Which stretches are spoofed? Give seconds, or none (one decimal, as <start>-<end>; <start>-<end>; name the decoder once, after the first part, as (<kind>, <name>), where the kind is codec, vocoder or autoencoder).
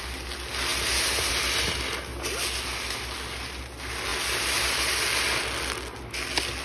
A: none